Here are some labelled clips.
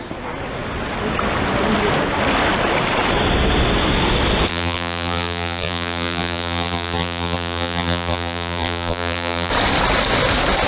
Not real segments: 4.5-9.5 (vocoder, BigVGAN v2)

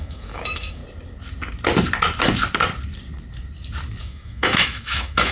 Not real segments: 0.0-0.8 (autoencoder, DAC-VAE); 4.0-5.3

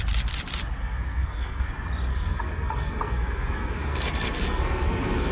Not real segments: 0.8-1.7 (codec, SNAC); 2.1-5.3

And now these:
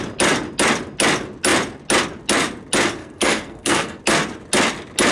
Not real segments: 3.0-4.0 (codec, SNAC)

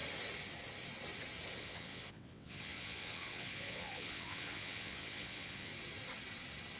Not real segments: 1.6-5.7 (vocoder, WaveNeXt)

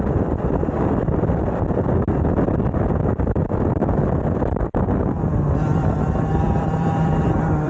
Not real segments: 0.0-3.8 (vocoder, BigVGAN v2); 6.1-7.7

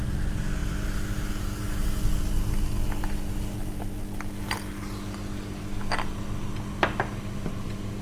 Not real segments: none

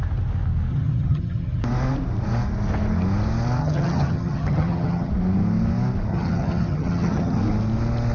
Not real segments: 0.7-1.6 (vocoder, HiFi-GAN); 3.6-5.1; 6.1-7.4